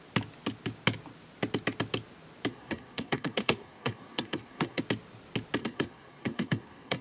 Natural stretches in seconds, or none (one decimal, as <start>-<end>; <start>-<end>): 0.0-2.5; 4.8-5.6